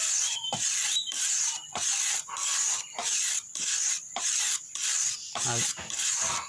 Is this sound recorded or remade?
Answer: remade